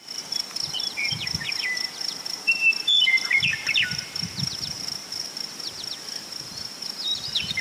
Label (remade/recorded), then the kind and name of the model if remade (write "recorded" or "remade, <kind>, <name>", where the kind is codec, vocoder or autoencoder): remade, vocoder, BigVGAN v2